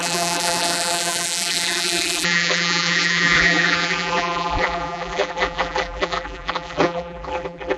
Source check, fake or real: fake